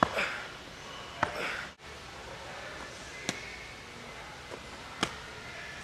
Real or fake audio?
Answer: real